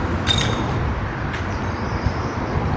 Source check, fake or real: fake